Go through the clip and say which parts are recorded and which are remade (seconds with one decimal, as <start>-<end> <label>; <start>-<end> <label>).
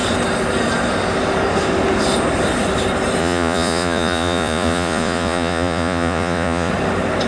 0.0-3.2 recorded; 3.2-6.7 remade; 6.7-7.3 recorded